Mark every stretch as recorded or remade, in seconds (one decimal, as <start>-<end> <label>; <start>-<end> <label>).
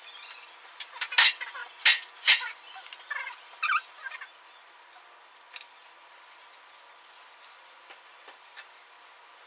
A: 0.0-9.5 recorded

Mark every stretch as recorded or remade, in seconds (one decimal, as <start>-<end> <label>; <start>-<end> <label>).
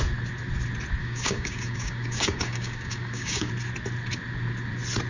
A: 0.0-1.0 recorded; 1.0-3.5 remade; 3.5-5.1 recorded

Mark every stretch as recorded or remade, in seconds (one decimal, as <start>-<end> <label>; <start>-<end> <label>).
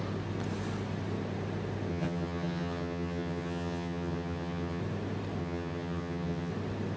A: 0.0-1.9 recorded; 1.9-4.8 remade; 4.8-5.4 recorded; 5.4-6.5 remade; 6.5-7.0 recorded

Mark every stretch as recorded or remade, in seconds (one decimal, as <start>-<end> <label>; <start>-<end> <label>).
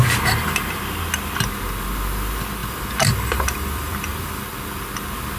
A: 0.0-2.6 recorded; 2.6-4.8 remade; 4.8-5.4 recorded